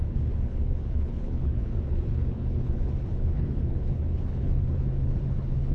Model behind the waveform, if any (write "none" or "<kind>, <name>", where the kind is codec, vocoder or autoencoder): codec, HILCodec